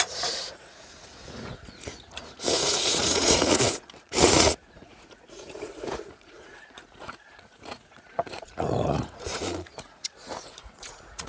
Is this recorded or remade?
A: remade